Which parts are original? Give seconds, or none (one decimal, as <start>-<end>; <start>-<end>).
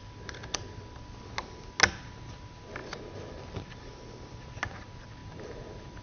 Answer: 0.0-5.2